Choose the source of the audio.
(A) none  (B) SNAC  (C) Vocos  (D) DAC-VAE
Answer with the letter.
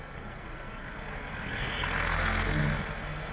B